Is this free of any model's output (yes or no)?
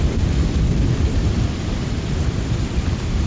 yes